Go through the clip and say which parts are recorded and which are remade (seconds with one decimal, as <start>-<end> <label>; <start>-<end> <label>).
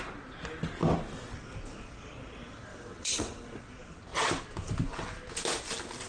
0.0-2.7 recorded; 2.7-3.6 remade; 3.6-6.1 recorded